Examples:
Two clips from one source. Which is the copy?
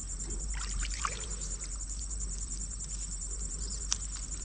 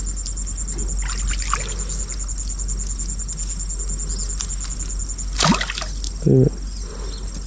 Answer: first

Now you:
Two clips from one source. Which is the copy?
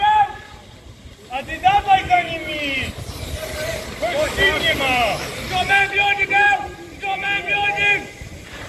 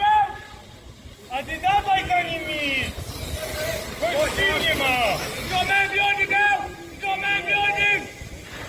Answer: first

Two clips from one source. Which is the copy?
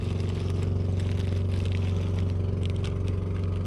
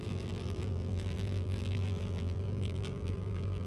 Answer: second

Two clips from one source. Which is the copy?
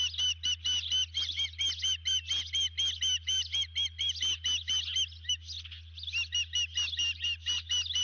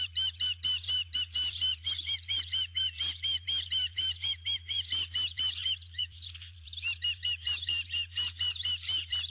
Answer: second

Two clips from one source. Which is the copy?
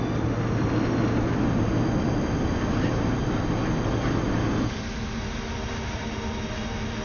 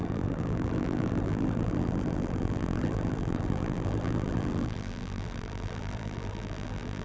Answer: second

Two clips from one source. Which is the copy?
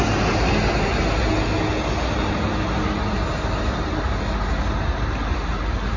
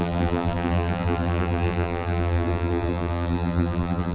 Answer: second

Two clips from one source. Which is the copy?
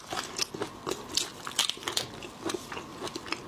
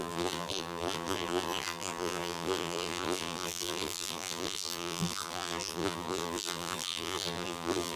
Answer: second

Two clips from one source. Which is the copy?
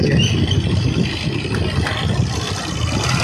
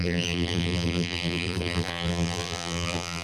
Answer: second